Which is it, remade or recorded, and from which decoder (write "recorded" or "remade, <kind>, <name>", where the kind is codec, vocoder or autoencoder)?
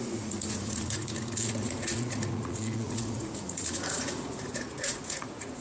remade, vocoder, Vocos